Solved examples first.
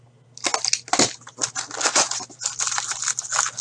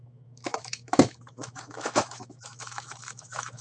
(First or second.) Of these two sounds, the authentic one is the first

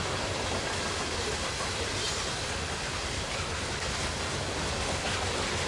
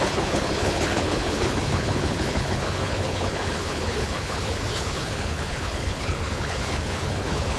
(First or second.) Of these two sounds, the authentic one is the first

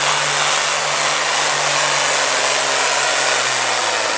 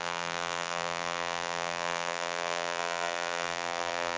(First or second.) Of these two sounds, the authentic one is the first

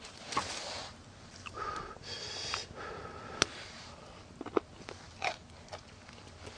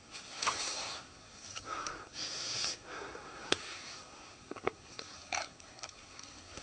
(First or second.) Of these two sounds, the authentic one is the first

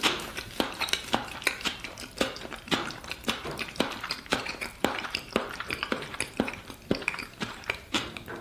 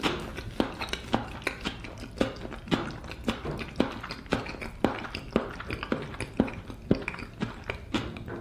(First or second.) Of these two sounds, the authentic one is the second